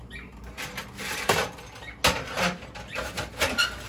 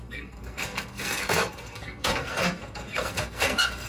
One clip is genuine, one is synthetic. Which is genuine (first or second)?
first